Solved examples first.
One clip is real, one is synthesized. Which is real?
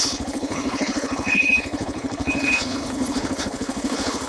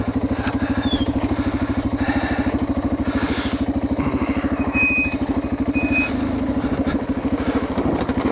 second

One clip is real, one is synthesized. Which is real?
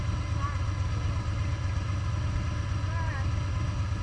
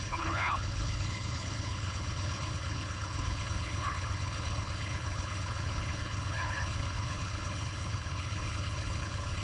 first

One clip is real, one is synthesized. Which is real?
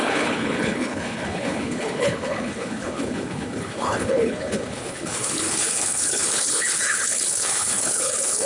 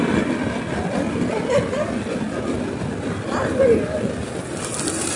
second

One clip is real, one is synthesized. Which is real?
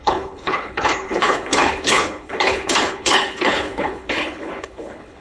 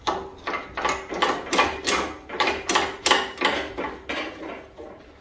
second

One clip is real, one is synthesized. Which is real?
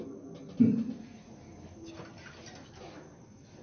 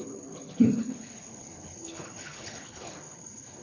first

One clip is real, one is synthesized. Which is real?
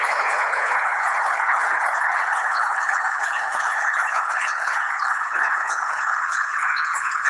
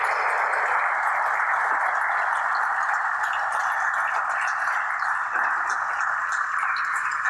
second